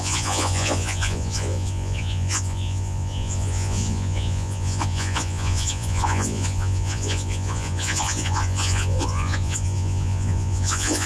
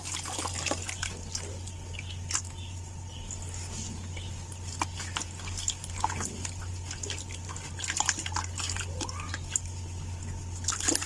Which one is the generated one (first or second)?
first